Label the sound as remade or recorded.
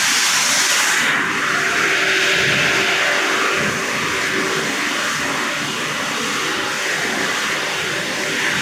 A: recorded